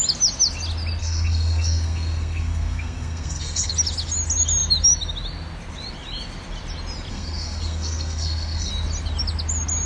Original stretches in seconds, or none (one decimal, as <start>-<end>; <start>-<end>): 0.0-1.0; 3.7-7.1; 8.7-9.9